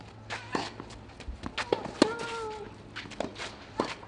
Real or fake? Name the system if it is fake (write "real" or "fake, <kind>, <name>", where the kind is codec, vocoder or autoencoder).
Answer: real